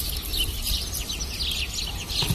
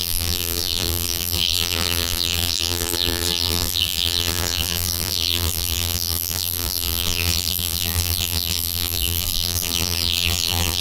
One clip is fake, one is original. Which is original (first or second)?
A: first